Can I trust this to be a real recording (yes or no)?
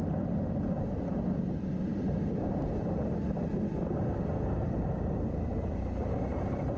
no